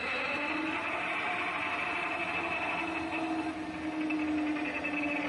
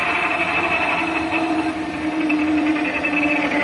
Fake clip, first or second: second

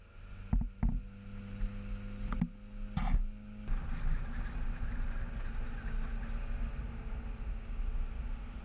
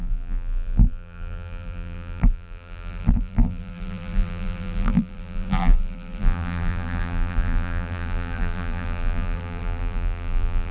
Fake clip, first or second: second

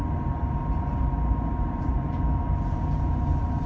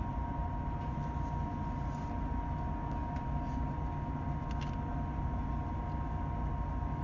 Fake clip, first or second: first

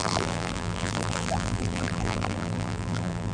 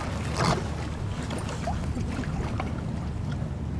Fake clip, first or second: first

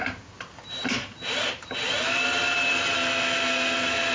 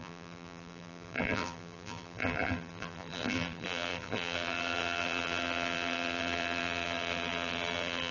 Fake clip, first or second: second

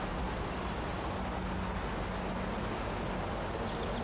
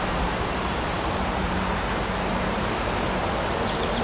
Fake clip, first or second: second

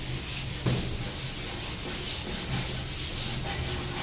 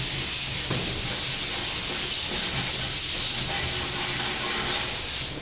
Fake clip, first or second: second